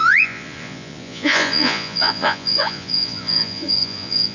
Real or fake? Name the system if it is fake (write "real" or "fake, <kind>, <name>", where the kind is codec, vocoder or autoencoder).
fake, vocoder, Vocos